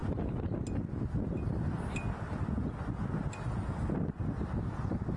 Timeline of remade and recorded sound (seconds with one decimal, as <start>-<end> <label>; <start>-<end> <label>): 0.0-5.2 recorded